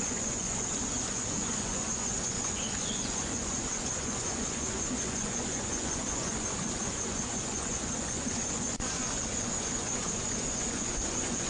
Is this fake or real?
fake